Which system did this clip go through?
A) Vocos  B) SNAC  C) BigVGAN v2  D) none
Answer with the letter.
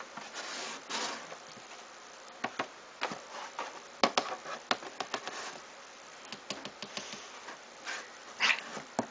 D